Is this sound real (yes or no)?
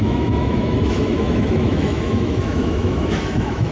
no